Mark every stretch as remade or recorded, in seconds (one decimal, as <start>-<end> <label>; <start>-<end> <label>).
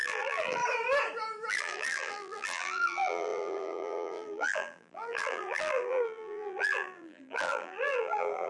0.0-0.6 remade; 0.6-1.5 recorded; 1.5-8.5 remade